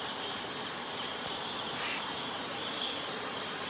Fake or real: fake